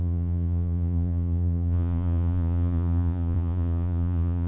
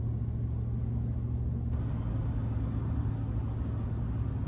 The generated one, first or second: first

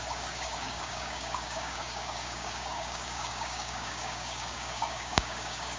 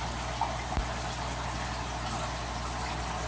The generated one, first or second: first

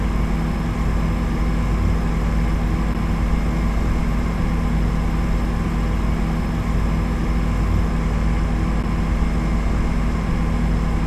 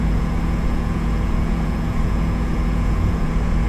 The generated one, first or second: second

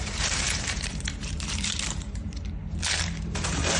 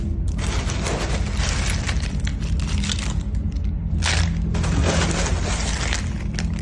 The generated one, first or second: first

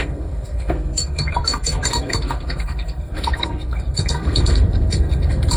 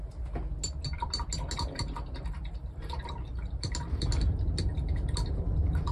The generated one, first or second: first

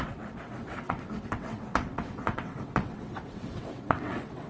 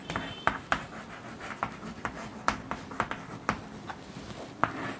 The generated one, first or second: first